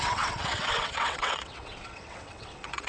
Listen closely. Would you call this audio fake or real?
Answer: fake